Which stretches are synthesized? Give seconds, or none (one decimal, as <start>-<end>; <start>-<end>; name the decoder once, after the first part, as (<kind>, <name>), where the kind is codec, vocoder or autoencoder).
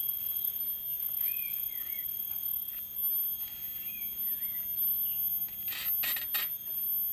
0.0-0.6 (vocoder, BigVGAN v2); 1.0-2.7